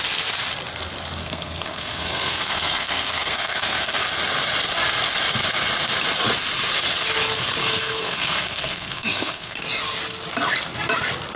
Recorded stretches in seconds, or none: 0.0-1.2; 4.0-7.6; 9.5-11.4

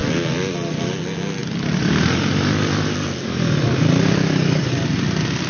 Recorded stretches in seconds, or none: 0.0-1.4; 4.7-5.5